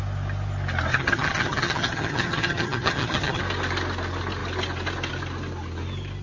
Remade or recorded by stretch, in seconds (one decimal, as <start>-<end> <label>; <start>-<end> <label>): 0.0-0.9 recorded; 0.9-3.4 remade; 3.4-6.2 recorded